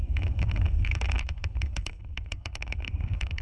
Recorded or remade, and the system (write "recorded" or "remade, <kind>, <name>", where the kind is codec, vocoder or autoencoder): remade, codec, SNAC